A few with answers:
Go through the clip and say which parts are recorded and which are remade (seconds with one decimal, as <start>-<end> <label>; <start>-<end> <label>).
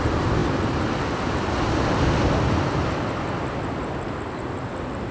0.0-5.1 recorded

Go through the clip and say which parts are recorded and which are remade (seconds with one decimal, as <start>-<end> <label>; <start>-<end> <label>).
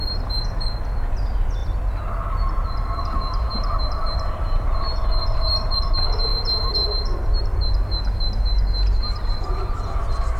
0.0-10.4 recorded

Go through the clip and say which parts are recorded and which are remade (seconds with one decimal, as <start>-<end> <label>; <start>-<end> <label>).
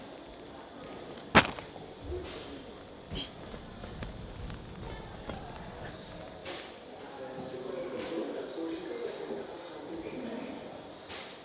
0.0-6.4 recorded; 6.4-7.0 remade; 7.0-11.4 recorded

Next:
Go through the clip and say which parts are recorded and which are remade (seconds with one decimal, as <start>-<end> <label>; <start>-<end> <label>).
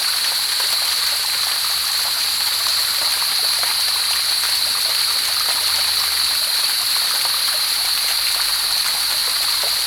0.0-9.9 recorded